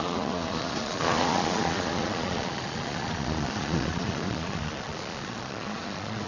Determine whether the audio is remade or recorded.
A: remade